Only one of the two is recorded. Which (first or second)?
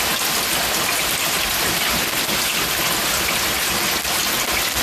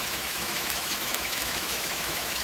first